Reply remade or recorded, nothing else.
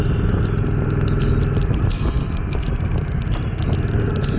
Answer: recorded